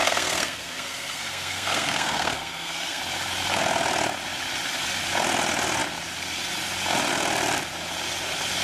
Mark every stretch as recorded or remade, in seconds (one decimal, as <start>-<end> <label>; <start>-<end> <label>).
0.0-3.0 remade; 3.0-8.6 recorded